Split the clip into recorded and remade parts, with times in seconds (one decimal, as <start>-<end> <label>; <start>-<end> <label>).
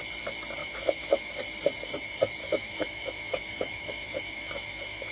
0.0-0.6 recorded; 0.6-1.4 remade; 1.4-2.4 recorded; 2.4-5.1 remade